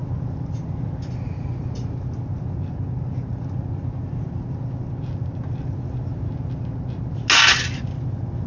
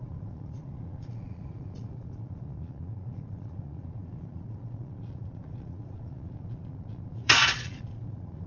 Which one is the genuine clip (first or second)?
first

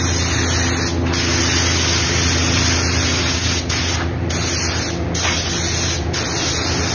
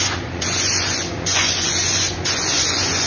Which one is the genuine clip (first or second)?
first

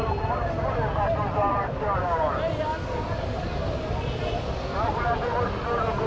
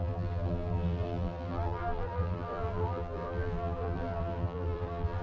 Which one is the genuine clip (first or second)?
first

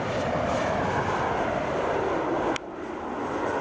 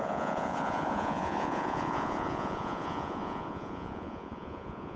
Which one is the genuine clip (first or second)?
first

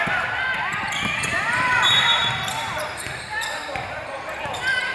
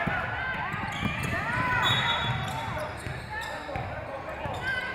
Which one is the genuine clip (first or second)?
second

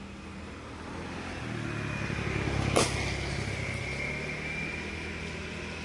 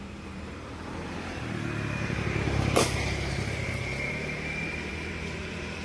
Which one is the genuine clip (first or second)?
first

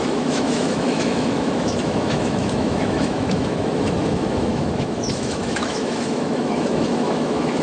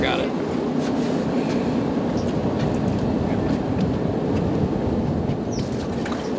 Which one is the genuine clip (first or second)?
second